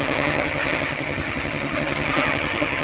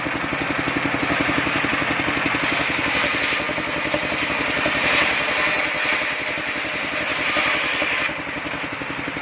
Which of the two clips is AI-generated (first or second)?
first